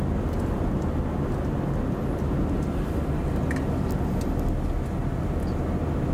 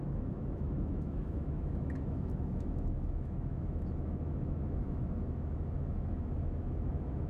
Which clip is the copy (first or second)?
second